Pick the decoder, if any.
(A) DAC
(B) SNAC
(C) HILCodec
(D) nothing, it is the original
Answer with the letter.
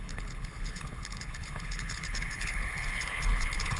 C